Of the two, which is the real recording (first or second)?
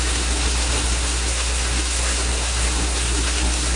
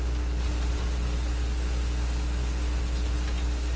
second